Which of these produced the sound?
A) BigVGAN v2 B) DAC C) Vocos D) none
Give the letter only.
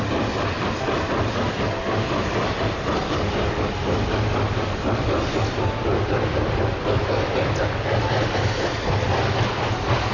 D